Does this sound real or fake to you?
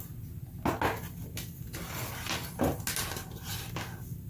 real